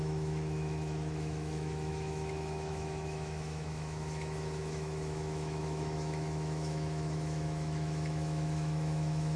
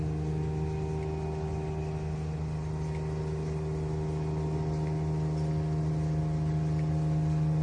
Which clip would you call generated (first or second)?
first